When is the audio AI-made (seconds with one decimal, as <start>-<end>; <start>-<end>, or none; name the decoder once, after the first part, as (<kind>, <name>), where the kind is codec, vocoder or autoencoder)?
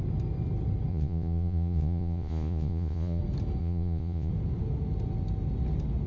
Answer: 0.9-3.2 (vocoder, Vocos); 3.6-4.3